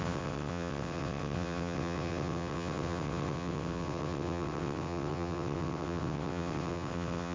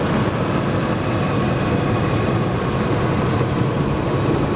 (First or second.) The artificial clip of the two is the first